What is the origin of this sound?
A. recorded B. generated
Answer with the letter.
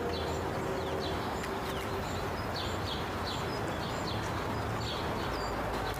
A